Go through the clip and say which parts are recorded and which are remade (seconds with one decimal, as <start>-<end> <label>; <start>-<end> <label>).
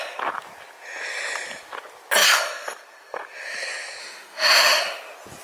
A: 0.0-4.0 recorded; 4.0-4.8 remade; 4.8-5.4 recorded